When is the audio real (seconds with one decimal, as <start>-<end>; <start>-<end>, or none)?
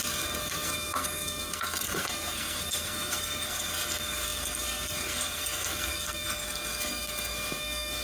none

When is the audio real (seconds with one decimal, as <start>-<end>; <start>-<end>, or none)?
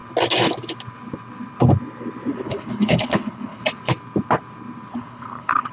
0.0-2.3; 3.6-4.9